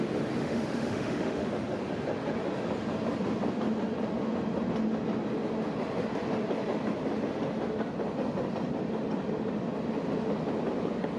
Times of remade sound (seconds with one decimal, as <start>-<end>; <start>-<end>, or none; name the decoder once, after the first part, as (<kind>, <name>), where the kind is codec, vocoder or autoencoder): 0.4-1.5 (autoencoder, DAC-VAE)